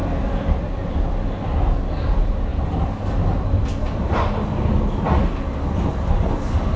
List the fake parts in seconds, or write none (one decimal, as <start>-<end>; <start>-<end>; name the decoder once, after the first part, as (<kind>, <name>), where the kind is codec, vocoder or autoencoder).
none